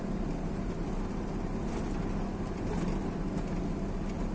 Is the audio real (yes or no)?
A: yes